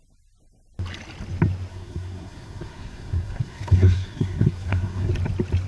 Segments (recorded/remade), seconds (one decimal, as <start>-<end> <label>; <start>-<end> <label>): 0.0-1.7 recorded; 1.7-5.1 remade; 5.1-5.7 recorded